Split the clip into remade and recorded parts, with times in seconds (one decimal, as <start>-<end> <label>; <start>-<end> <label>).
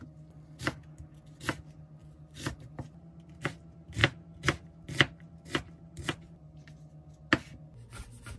0.0-8.4 recorded